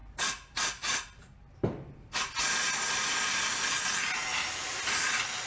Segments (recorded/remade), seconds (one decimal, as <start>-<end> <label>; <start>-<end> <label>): 0.0-2.1 remade; 2.1-5.5 recorded